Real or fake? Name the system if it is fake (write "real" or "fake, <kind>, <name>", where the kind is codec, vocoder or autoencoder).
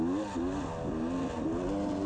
real